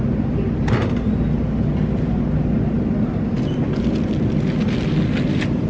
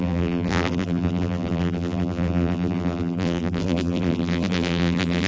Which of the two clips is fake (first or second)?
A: second